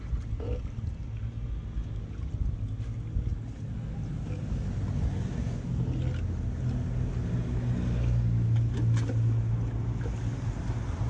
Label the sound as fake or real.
real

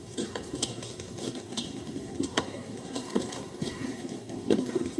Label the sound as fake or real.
fake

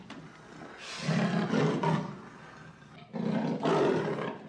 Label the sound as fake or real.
real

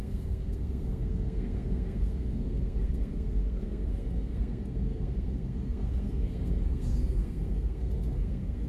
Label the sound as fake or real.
fake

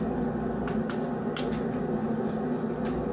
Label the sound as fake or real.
real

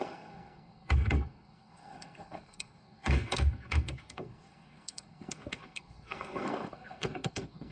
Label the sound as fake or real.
fake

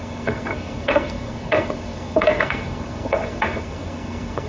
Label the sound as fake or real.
fake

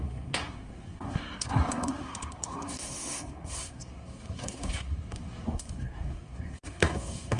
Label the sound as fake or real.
fake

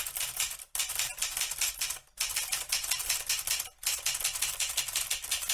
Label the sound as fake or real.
real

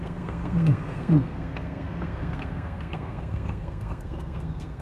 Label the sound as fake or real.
fake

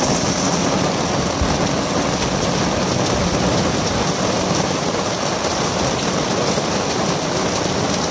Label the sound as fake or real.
real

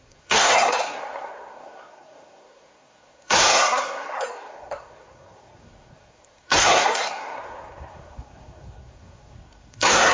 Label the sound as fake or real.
fake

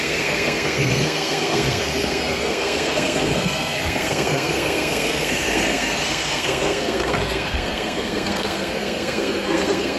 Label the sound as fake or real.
fake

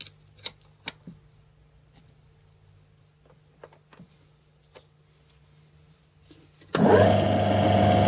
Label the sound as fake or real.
real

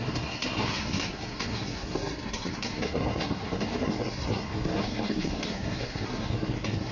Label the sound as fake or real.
fake